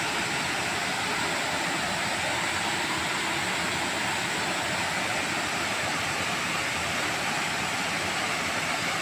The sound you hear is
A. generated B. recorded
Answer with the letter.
B